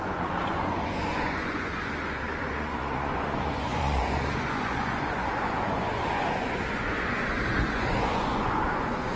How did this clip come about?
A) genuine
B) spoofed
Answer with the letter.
B